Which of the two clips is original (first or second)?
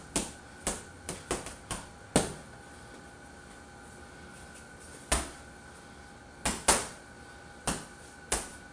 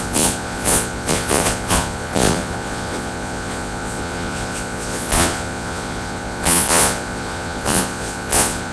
first